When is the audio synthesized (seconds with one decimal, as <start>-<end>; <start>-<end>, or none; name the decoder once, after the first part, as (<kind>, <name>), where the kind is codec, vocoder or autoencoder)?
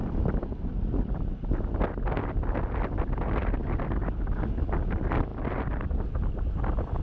none